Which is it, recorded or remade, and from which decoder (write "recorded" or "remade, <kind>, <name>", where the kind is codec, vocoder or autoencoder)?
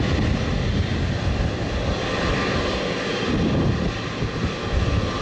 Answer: recorded